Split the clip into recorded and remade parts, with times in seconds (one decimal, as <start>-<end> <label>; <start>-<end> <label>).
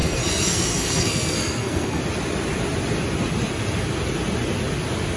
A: 0.0-2.0 remade; 2.0-5.2 recorded